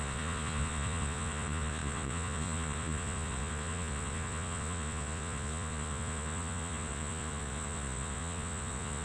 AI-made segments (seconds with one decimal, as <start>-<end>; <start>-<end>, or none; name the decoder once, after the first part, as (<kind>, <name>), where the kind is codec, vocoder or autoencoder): 0.0-9.0 (vocoder, Vocos)